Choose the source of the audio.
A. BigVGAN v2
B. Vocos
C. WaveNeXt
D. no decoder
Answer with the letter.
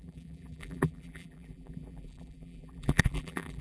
A